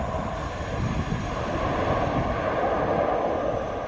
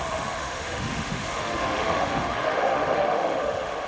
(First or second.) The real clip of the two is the first